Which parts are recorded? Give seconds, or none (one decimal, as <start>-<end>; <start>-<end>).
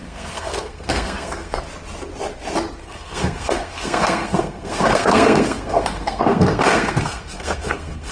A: 1.6-2.8